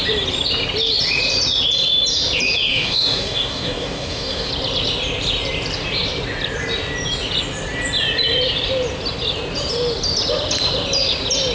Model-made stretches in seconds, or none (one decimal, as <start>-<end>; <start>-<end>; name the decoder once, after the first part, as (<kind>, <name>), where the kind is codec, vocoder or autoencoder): 2.7-4.5 (codec, DAC)